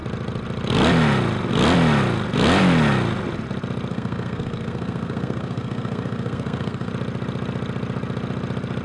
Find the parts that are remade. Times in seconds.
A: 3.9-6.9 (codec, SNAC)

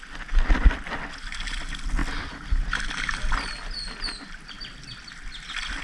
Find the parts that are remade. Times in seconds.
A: none